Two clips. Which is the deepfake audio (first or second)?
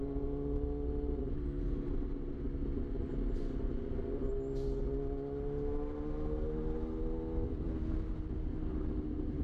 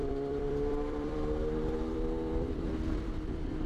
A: second